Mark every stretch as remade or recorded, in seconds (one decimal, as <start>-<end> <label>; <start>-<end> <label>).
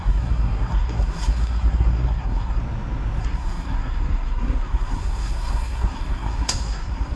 0.0-2.6 remade; 2.6-3.2 recorded; 3.2-7.2 remade